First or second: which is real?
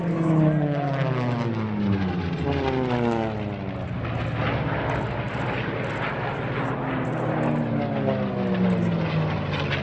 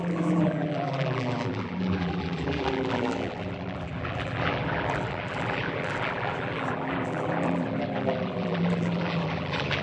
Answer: first